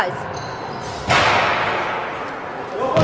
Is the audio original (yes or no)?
yes